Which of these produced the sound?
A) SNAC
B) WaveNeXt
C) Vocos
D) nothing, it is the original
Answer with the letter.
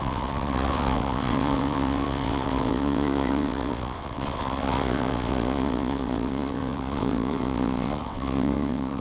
B